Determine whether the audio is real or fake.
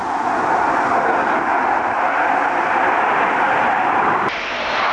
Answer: real